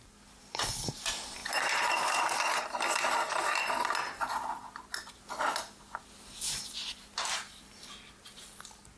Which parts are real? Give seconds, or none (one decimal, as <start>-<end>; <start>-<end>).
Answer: 0.0-1.4; 2.2-9.0